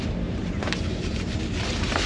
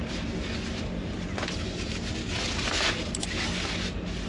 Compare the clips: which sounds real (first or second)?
second